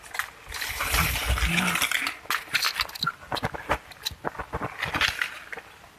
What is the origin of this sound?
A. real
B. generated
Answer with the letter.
A